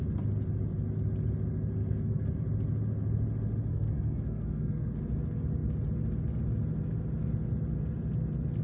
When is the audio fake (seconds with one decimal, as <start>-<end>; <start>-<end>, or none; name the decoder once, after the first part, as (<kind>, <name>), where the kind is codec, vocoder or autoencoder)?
1.8-2.3 (codec, SNAC); 3.7-4.9